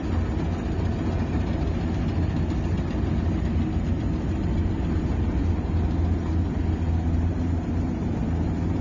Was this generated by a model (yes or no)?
no